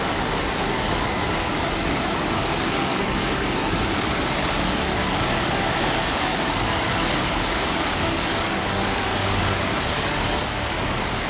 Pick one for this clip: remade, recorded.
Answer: remade